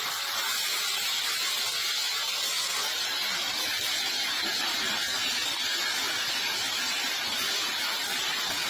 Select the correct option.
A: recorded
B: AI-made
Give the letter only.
A